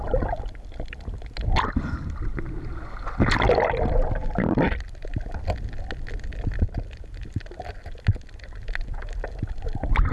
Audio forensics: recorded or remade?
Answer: recorded